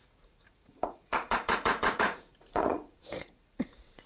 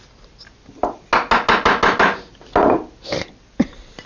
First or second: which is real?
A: second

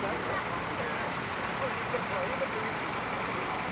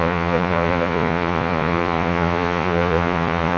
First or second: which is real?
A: first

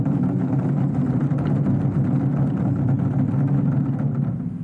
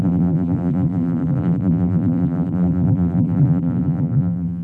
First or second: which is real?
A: first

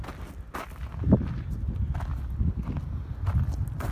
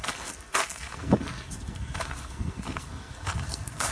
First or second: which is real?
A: first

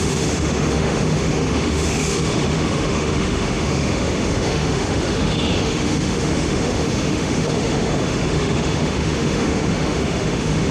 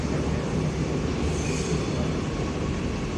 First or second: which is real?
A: second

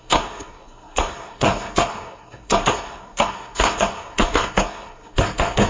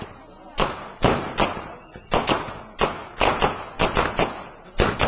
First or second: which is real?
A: second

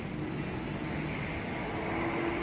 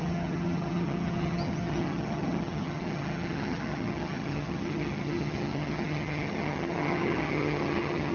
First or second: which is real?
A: first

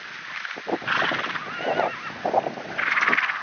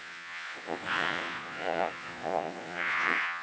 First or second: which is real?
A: first